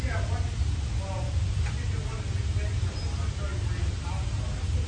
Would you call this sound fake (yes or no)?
no